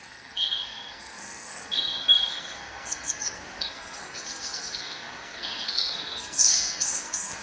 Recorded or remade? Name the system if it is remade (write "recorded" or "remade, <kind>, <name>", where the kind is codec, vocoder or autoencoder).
remade, codec, SNAC